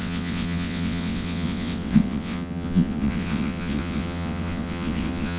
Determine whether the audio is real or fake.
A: fake